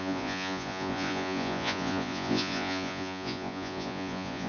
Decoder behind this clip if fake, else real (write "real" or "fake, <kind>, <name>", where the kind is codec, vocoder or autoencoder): fake, vocoder, Vocos